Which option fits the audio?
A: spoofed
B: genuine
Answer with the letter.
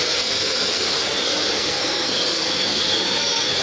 A